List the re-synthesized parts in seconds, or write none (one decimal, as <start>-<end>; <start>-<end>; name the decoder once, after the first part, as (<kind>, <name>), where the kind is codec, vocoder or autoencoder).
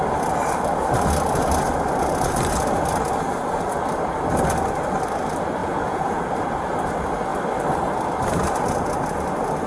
5.6-6.3 (vocoder, Vocos)